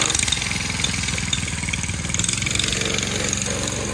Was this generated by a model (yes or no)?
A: no